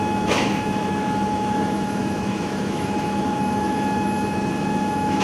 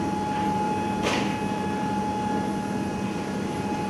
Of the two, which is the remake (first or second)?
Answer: first